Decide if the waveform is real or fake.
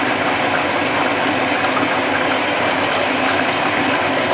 real